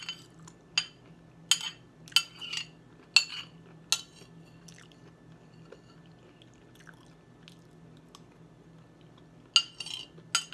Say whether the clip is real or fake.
real